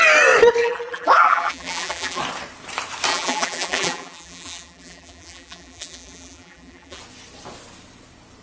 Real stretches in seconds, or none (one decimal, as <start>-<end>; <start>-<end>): 0.0-0.6; 2.2-3.1; 7.0-8.4